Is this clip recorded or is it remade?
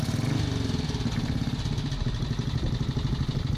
recorded